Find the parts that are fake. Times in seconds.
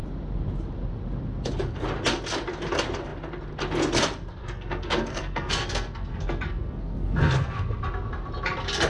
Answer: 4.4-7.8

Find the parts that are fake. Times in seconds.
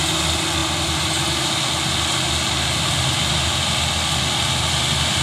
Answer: none